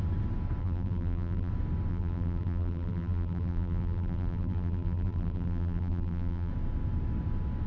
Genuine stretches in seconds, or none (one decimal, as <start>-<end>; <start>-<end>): 0.0-0.6; 1.5-1.9; 6.5-7.7